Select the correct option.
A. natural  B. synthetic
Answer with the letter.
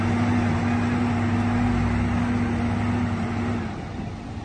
A